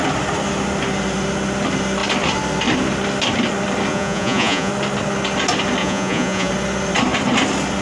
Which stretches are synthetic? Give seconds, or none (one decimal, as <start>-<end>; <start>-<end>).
3.9-4.7; 5.8-6.5